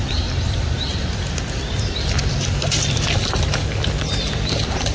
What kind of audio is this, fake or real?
fake